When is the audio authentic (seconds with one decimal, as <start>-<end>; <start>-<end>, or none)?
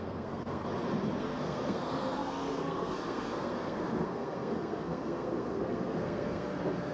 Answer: 0.6-1.2